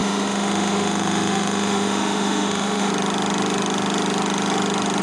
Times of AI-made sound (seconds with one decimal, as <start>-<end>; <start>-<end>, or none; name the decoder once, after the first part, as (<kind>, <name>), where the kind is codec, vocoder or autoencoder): 0.0-2.9 (autoencoder, DAC-VAE)